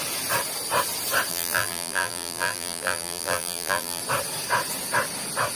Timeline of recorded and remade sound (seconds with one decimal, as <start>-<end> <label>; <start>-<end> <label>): 0.0-1.3 recorded; 1.3-4.0 remade; 4.0-5.6 recorded